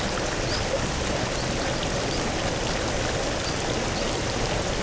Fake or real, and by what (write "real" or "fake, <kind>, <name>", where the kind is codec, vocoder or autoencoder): real